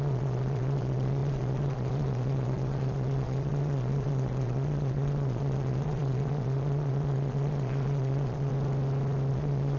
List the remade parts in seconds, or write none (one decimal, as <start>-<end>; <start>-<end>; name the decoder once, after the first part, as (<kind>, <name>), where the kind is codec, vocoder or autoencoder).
0.0-8.5 (vocoder, Vocos); 9.3-9.8